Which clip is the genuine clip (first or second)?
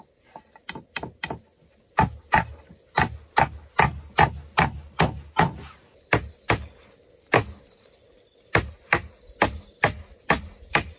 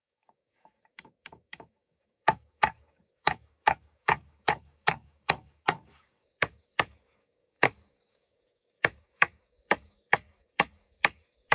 first